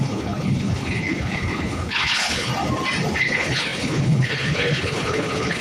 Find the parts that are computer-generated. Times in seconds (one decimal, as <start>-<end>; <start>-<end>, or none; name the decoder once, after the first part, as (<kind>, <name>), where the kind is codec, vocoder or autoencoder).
0.0-2.5 (codec, HILCodec); 3.2-5.6